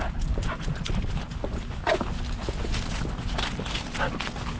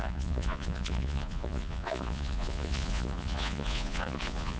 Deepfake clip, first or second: second